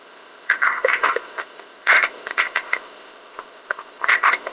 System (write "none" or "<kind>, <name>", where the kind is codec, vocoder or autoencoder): codec, ZipCodec